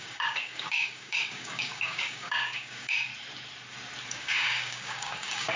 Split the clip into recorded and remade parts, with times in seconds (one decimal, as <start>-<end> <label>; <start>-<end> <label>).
0.0-3.1 remade; 3.1-4.1 recorded; 4.1-5.6 remade